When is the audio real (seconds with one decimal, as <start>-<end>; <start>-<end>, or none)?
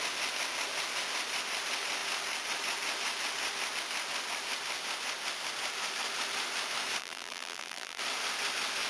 0.0-7.0; 8.0-8.9